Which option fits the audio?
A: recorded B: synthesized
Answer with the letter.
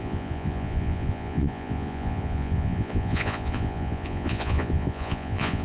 B